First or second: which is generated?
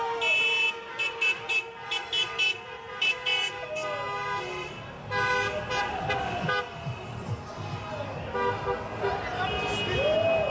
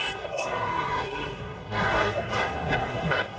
second